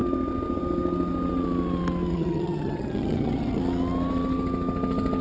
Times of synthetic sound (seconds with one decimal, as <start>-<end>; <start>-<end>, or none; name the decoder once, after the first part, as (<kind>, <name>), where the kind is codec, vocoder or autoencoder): 2.1-3.6 (vocoder, HiFi-GAN)